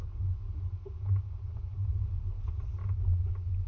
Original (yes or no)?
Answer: yes